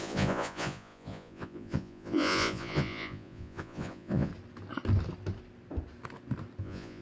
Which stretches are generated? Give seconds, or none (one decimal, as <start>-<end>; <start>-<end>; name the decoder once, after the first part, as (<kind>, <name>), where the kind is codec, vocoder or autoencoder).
0.0-4.3 (vocoder, Vocos); 6.6-7.0